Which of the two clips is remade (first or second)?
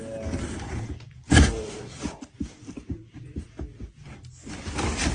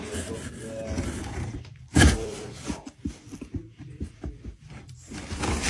second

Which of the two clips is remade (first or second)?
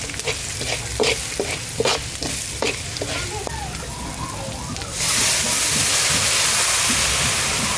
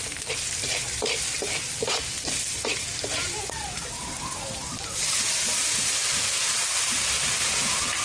second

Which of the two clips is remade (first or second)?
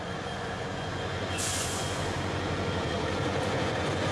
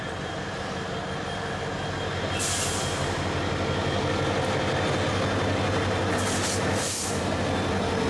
first